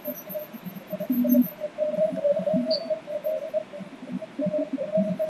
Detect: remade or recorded recorded